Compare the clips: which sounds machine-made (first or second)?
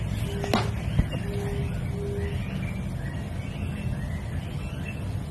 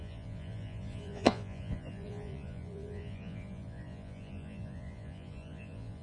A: second